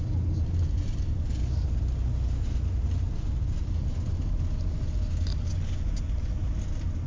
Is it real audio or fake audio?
real